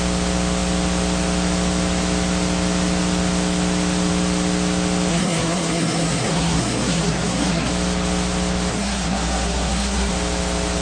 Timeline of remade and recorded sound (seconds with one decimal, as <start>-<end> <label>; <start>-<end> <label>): 0.0-5.1 recorded; 5.1-7.7 remade; 7.7-8.7 recorded; 8.7-10.1 remade; 10.1-10.8 recorded